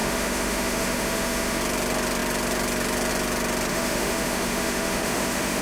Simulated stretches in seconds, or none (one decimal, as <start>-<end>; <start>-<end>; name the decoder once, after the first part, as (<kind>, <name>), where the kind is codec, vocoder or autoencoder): 0.0-1.6 (autoencoder, DAC-VAE); 3.7-5.6

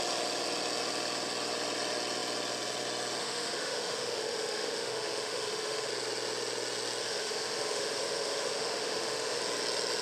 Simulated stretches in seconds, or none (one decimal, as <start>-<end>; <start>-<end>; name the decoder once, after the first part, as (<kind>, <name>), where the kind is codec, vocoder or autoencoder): 3.2-5.9 (autoencoder, DAC-VAE); 7.0-9.4